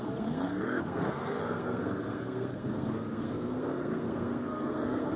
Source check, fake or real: fake